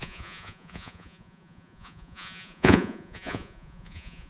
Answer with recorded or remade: remade